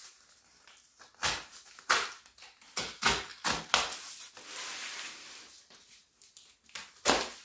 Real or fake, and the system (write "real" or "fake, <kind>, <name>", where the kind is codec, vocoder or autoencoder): real